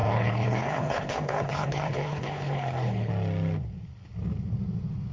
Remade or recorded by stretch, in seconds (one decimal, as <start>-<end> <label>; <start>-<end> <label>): 0.0-3.1 remade; 3.1-5.1 recorded